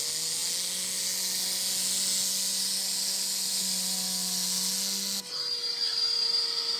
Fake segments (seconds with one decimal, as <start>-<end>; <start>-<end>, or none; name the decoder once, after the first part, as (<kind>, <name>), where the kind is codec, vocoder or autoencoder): none